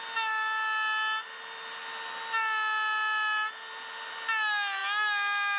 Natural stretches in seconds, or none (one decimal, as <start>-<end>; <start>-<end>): 0.0-5.6